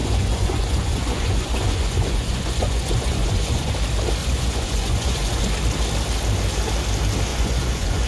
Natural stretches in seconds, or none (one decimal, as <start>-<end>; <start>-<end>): 3.7-4.2; 5.5-7.3